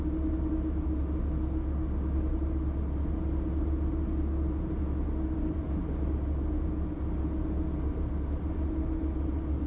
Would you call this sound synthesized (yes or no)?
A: no